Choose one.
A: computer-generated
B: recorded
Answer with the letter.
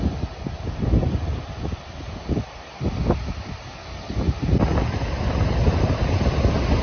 B